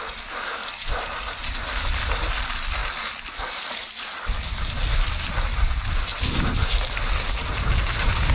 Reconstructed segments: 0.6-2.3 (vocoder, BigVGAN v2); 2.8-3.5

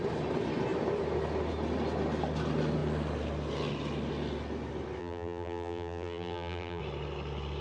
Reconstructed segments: 5.0-6.8 (vocoder, BigVGAN v2)

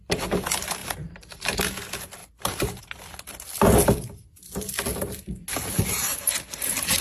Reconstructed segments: 0.8-1.6 (vocoder, BigVGAN v2); 2.2-2.8